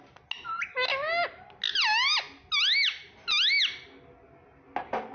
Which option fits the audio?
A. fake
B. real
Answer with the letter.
B